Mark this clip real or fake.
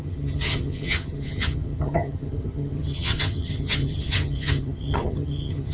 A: fake